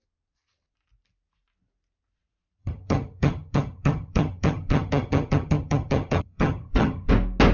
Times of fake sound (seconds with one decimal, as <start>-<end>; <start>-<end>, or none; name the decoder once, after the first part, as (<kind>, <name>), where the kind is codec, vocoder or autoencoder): 2.6-7.1 (vocoder, HiFi-GAN)